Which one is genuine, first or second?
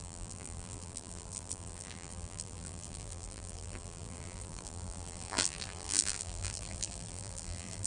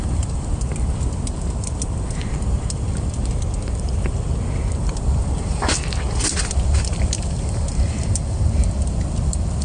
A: second